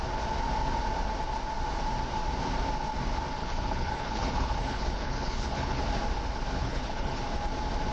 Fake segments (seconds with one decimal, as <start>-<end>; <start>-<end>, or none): 3.4-5.8; 6.6-7.2